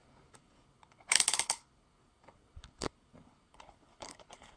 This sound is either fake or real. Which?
fake